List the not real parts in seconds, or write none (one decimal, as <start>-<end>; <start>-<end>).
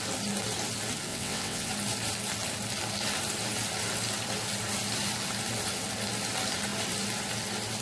1.1-1.7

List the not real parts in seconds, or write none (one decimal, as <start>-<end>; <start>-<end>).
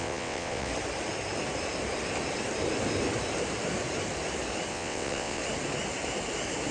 0.0-0.7; 4.7-5.4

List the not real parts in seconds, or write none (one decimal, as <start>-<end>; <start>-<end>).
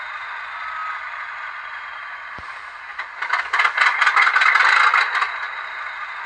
none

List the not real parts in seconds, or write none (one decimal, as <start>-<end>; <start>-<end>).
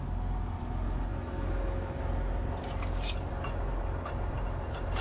none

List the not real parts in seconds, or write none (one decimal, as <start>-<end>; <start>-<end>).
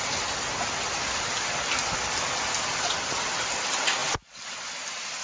none